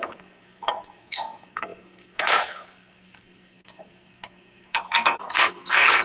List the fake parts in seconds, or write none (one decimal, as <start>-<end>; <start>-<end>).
0.0-6.0